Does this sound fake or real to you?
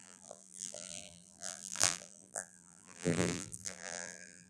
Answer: fake